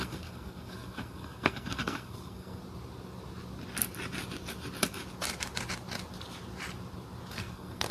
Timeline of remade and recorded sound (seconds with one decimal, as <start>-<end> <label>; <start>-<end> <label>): 0.0-2.6 remade; 2.6-7.3 recorded; 7.3-7.9 remade